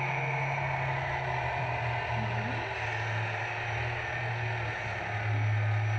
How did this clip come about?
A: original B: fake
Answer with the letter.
A